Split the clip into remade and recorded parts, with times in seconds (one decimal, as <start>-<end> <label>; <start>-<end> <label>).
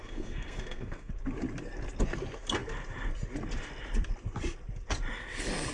0.0-1.1 remade; 1.1-5.7 recorded